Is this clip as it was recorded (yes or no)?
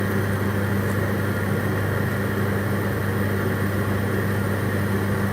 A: yes